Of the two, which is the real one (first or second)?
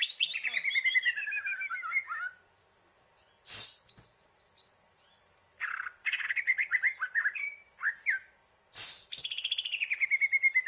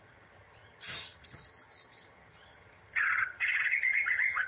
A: first